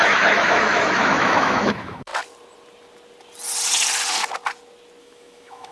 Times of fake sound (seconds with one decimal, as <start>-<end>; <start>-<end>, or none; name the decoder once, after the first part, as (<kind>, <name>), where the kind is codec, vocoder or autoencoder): 0.0-2.1 (autoencoder, DAC-VAE); 5.0-5.7